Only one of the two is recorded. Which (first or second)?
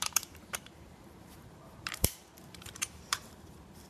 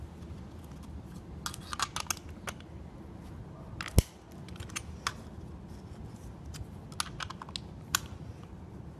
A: second